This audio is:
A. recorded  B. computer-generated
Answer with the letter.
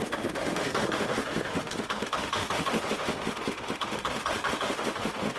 B